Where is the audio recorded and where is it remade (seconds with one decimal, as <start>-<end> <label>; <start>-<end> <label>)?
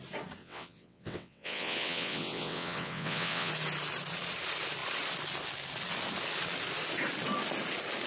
0.0-0.4 recorded; 0.4-3.5 remade; 3.5-8.1 recorded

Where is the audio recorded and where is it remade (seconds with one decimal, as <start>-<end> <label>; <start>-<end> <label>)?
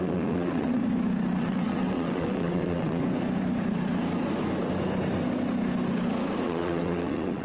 0.0-0.8 remade; 0.8-1.4 recorded; 1.4-3.0 remade; 3.0-6.4 recorded; 6.4-7.4 remade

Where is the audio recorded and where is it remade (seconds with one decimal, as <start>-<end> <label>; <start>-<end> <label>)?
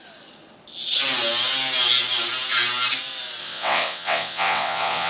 0.0-3.4 recorded; 3.4-5.1 remade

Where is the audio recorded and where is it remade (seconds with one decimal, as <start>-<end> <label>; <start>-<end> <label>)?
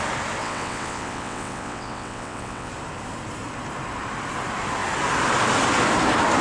0.0-0.4 recorded; 0.4-2.7 remade; 2.7-6.4 recorded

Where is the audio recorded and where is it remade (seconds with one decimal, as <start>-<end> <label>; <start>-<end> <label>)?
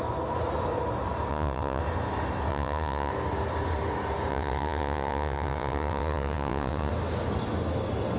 0.0-1.3 recorded; 1.3-1.8 remade; 1.8-2.5 recorded; 2.5-3.1 remade; 3.1-4.3 recorded; 4.3-6.9 remade; 6.9-8.2 recorded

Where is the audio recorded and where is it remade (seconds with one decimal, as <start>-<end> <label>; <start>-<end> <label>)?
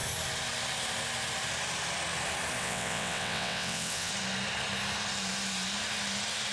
0.0-2.6 recorded; 2.6-4.1 remade; 4.1-6.5 recorded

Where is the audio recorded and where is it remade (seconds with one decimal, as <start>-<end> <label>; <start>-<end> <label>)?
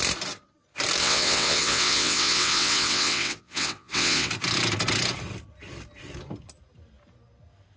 0.0-1.0 recorded; 1.0-4.3 remade; 4.3-7.8 recorded